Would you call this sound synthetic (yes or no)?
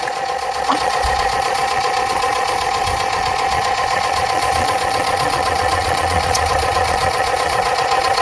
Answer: yes